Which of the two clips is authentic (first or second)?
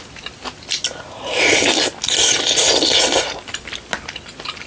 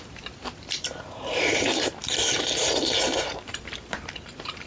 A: first